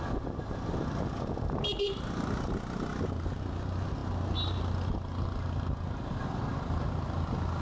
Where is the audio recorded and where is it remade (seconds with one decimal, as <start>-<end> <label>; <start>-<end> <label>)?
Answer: 0.0-7.6 recorded